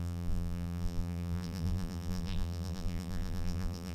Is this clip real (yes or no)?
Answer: no